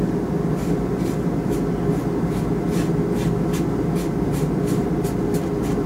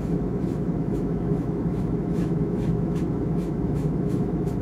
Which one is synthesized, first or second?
second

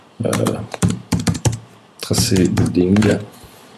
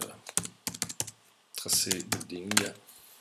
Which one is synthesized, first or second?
first